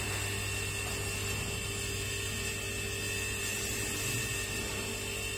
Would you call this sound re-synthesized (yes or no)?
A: no